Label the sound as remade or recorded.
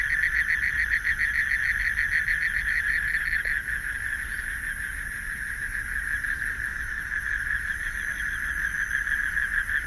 recorded